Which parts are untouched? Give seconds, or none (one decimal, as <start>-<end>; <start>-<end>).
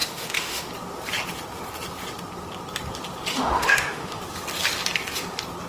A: 0.7-3.3; 4.2-5.7